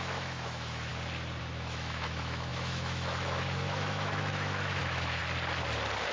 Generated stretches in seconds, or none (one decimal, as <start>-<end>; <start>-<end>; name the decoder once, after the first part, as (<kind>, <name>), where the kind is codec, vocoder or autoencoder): 0.0-0.9 (autoencoder, DAC-VAE); 1.4-5.2

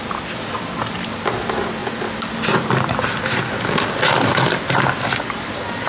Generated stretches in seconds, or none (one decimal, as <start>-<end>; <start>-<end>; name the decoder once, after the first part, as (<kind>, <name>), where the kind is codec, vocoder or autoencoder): none

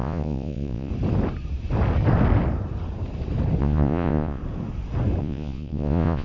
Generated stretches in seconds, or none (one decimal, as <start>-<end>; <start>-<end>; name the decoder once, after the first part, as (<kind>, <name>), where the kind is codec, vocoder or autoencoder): 0.0-0.9 (vocoder, Vocos); 3.6-4.4; 5.2-6.2

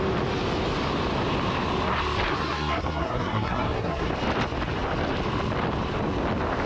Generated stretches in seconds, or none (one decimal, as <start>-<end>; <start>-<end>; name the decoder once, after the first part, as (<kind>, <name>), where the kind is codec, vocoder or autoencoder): 2.3-4.1 (codec, SNAC)

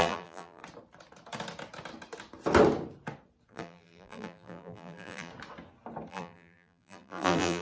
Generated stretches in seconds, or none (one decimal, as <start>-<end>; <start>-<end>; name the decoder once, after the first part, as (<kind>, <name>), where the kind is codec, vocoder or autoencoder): 0.0-0.6 (vocoder, BigVGAN v2); 3.5-5.3; 6.1-7.6

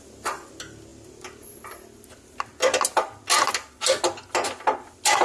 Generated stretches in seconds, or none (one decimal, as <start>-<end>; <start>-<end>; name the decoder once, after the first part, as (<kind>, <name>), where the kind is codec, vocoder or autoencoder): none